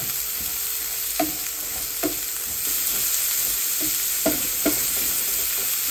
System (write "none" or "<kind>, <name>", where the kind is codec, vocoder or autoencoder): none